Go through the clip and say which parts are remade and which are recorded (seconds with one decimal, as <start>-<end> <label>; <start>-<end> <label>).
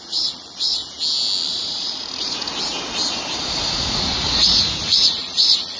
0.0-0.8 remade; 0.8-1.5 recorded; 1.5-2.5 remade; 2.5-3.5 recorded; 3.5-5.8 remade